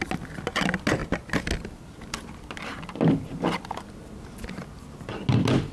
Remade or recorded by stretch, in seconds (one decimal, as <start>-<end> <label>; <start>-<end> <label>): 0.0-5.7 recorded